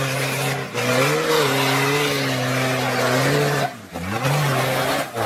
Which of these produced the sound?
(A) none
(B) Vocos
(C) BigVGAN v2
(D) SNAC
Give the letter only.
A